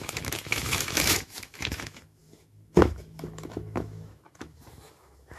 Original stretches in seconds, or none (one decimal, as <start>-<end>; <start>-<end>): none